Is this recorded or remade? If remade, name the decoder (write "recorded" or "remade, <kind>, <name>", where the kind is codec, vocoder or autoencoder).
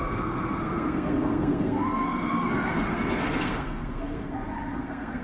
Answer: remade, codec, SNAC